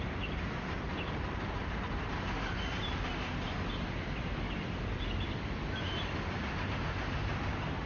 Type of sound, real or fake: real